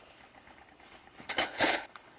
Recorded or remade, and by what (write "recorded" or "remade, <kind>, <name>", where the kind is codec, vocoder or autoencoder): remade, codec, HILCodec